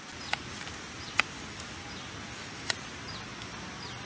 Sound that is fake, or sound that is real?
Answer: real